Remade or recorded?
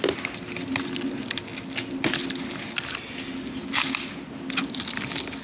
recorded